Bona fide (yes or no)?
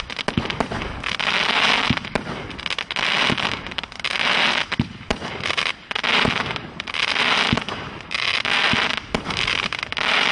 yes